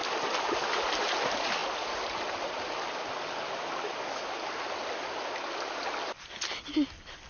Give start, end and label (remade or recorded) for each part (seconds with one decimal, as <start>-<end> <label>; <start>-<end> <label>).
0.0-7.3 recorded